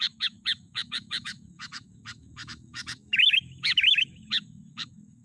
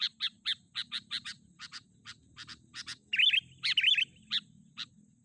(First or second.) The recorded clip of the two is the second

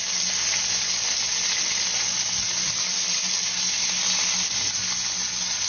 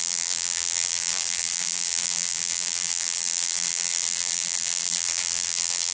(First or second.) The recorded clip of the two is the first